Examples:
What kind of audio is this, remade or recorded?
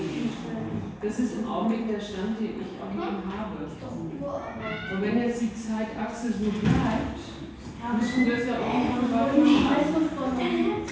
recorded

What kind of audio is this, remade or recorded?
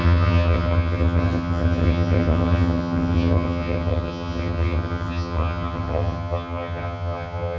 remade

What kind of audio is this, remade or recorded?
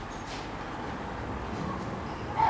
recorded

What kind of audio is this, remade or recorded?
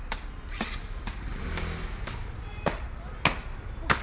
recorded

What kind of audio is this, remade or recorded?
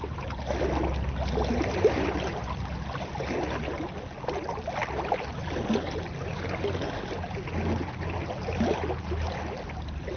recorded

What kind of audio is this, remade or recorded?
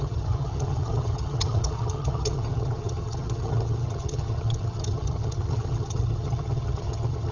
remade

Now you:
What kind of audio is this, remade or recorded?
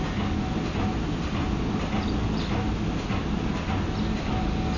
recorded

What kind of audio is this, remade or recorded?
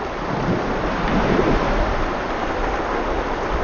recorded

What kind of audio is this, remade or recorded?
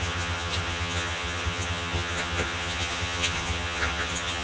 remade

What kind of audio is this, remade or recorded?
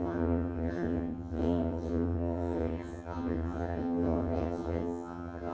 remade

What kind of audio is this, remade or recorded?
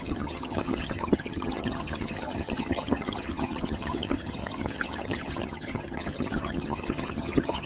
remade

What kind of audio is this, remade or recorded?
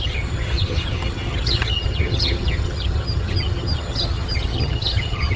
remade